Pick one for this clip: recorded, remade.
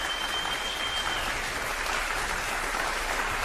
recorded